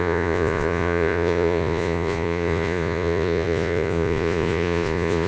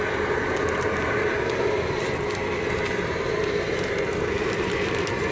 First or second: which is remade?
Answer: first